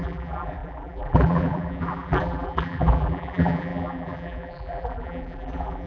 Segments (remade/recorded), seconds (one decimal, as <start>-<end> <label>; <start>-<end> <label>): 0.0-5.9 remade